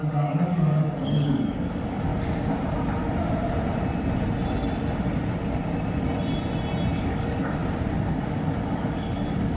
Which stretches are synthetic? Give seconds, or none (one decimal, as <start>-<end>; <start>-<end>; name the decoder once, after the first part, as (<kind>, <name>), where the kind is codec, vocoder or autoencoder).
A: 0.0-2.1 (codec, DAC); 6.9-7.6; 8.1-9.6